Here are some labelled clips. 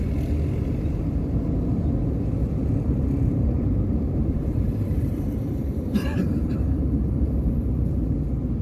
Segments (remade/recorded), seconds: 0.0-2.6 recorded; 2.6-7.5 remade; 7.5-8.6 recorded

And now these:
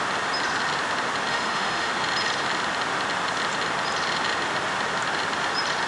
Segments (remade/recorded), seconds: 0.0-1.3 recorded; 1.3-1.9 remade; 1.9-5.9 recorded

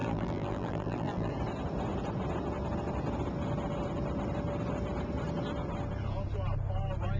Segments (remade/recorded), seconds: 0.0-1.3 remade; 1.3-7.2 recorded

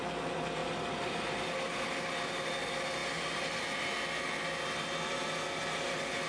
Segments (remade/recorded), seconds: 0.0-6.3 recorded

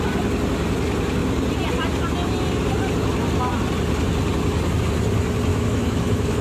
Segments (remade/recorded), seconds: 0.0-5.5 recorded; 5.5-6.4 remade

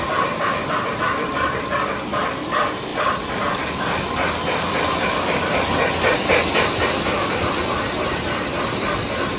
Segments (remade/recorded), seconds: 0.0-9.4 recorded